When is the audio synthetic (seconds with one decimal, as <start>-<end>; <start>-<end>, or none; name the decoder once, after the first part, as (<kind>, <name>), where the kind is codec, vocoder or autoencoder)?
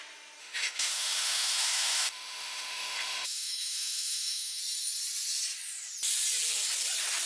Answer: 0.4-4.6 (autoencoder, DAC-VAE)